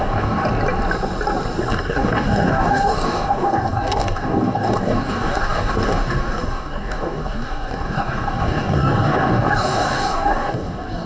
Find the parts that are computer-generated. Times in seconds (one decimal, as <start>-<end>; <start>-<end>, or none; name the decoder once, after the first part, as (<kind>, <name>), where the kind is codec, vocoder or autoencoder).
0.0-0.4 (codec, DAC); 1.7-11.1